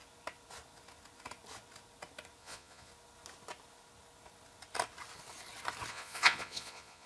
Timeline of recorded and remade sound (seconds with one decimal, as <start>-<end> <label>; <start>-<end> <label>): 0.0-2.4 recorded; 2.4-2.9 remade; 2.9-5.9 recorded; 5.9-7.1 remade